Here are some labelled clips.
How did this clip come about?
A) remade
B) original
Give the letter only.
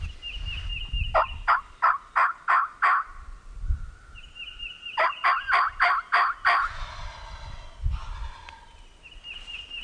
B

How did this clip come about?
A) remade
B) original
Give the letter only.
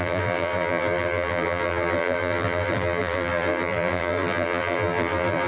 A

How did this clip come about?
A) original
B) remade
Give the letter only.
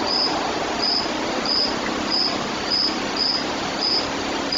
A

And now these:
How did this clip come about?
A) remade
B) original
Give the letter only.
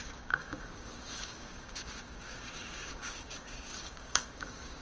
A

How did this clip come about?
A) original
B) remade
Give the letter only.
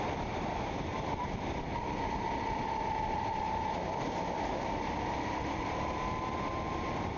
A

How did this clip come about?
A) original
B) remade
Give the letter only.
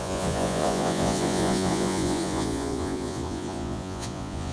B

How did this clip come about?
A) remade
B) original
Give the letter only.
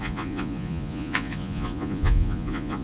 A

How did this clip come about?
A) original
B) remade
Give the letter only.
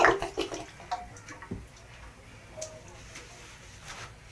A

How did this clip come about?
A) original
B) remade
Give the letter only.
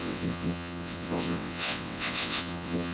B